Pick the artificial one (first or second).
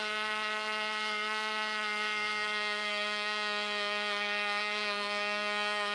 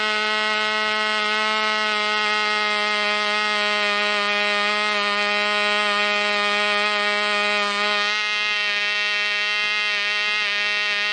first